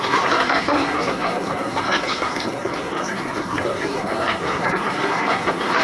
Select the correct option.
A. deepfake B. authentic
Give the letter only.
A